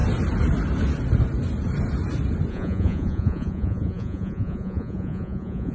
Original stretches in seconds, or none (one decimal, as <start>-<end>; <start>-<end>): 0.0-2.5